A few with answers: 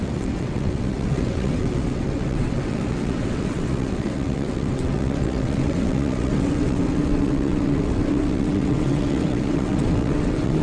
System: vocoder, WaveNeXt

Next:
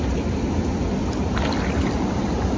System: none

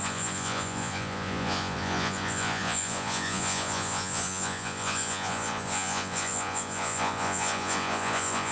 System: vocoder, Vocos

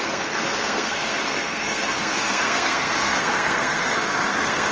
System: codec, SNAC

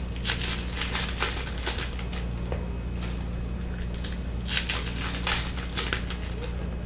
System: none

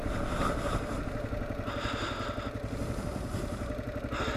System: none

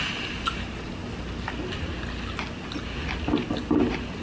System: none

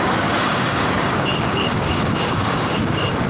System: codec, DAC